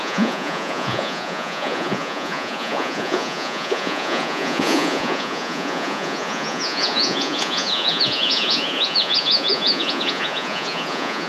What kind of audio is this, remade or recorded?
remade